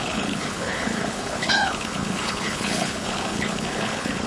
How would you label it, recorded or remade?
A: remade